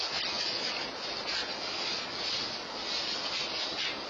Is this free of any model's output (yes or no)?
yes